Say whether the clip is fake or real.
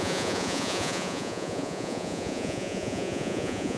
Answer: fake